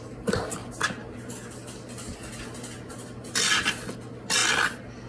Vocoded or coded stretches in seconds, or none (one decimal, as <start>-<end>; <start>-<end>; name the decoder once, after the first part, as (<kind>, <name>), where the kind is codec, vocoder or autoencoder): none